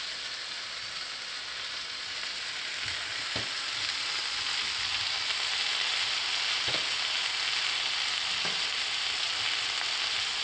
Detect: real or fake real